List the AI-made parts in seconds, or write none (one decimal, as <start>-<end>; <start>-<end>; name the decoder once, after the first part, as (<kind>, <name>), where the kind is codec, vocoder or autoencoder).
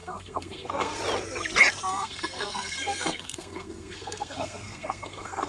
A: 0.0-1.0 (codec, SNAC); 1.9-5.5